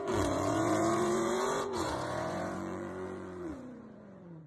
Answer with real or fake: fake